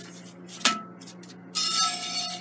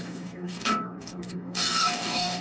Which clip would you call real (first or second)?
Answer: first